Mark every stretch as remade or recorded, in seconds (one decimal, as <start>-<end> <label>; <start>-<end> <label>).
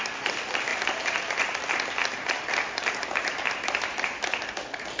0.0-5.0 recorded